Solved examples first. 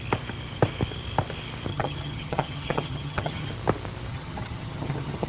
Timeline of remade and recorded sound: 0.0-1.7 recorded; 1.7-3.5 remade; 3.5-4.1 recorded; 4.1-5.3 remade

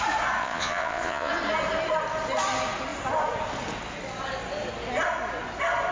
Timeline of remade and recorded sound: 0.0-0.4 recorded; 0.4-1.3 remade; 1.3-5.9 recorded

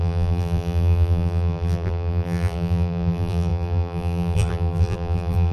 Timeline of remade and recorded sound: 0.0-5.5 remade

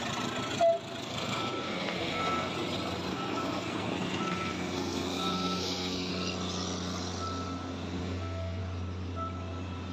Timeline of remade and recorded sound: 0.0-1.0 recorded; 1.0-2.5 remade; 2.5-3.1 recorded; 3.1-6.1 remade; 6.1-8.0 recorded; 8.0-8.6 remade; 8.6-9.9 recorded

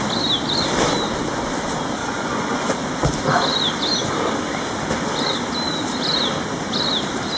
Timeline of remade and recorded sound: 0.0-2.0 recorded; 2.0-2.7 remade; 2.7-7.4 recorded